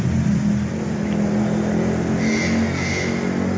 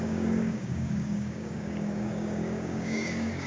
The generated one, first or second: second